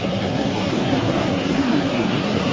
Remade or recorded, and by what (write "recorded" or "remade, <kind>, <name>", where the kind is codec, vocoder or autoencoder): remade, codec, SNAC